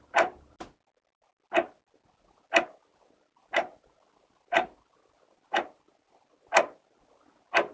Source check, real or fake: real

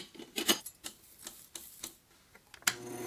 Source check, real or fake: real